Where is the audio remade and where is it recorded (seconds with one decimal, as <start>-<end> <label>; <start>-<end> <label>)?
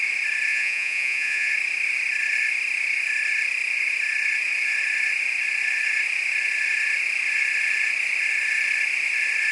0.0-0.5 recorded; 0.5-1.5 remade; 1.5-9.5 recorded